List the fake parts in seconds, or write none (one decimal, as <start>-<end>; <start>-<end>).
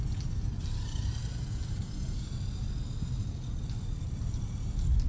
none